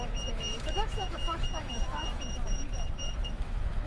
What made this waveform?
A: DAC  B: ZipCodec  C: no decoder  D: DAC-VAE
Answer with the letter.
D